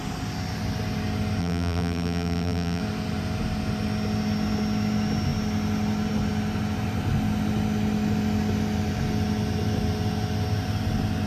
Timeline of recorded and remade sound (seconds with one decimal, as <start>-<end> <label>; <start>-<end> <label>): 0.0-1.4 recorded; 1.4-2.8 remade; 2.8-11.3 recorded